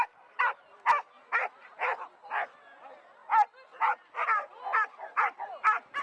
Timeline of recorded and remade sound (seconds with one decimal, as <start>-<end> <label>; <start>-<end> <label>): 0.0-6.0 recorded